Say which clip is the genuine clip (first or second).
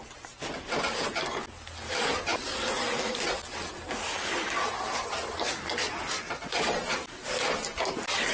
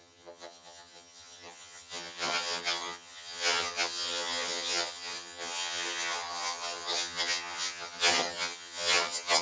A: first